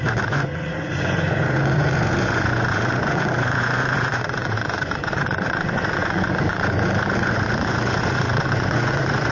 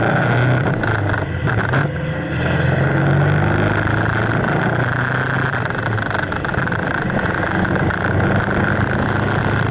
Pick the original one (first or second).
second